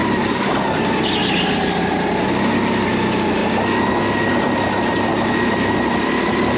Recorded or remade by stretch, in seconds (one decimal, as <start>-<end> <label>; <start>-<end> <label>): 0.0-0.6 remade; 0.6-1.2 recorded; 1.2-1.8 remade; 1.8-5.1 recorded; 5.1-5.8 remade; 5.8-6.6 recorded